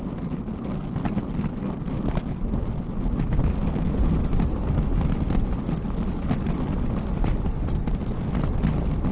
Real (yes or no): yes